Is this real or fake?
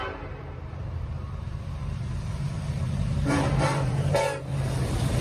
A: fake